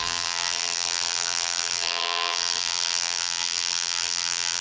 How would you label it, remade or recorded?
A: remade